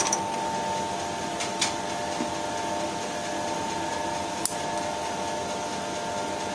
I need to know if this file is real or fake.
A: real